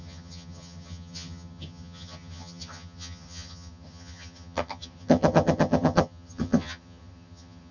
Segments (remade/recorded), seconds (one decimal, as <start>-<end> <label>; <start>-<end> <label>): 0.0-7.7 remade